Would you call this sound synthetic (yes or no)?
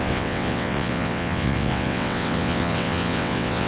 yes